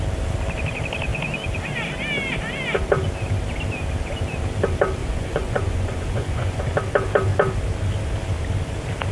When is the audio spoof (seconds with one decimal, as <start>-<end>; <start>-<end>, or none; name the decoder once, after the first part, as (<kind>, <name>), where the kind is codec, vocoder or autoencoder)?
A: 5.0-6.6 (vocoder, Vocos)